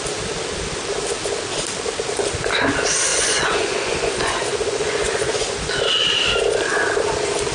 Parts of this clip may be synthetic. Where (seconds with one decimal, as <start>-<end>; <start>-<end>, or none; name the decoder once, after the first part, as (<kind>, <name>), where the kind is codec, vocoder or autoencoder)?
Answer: 3.1-5.7 (vocoder, Vocos)